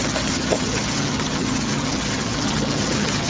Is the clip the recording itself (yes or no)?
no